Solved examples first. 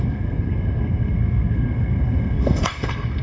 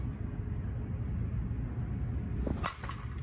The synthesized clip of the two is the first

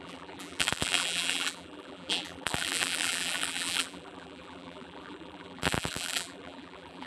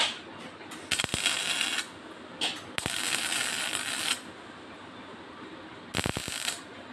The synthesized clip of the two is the first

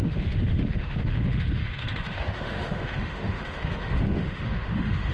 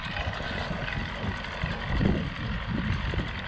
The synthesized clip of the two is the first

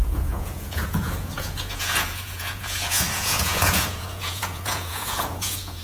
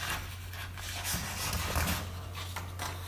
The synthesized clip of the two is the first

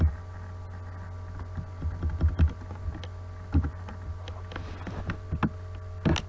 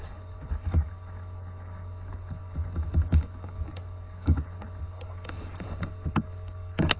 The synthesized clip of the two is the second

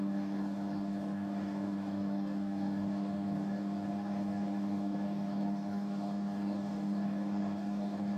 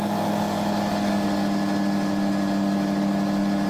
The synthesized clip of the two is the first